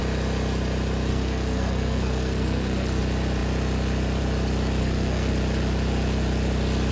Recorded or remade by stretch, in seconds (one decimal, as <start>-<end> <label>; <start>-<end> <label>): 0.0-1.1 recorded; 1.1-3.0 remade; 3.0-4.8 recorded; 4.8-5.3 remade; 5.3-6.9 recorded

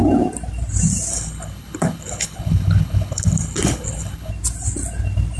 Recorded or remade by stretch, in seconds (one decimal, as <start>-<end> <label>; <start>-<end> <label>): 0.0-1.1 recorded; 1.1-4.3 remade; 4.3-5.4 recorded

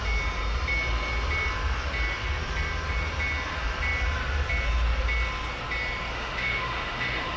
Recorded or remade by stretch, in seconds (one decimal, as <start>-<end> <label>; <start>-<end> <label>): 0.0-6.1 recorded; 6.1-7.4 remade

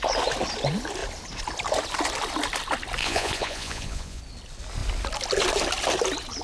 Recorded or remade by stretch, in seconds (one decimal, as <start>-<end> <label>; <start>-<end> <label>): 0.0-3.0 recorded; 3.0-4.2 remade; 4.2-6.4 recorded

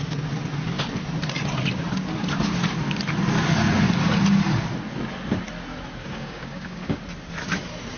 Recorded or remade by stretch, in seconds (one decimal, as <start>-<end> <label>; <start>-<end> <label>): 0.0-6.0 recorded; 6.0-7.0 remade; 7.0-8.0 recorded